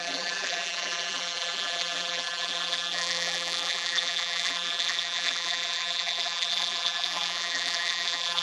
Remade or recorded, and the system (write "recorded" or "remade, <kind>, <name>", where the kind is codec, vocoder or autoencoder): remade, vocoder, BigVGAN v2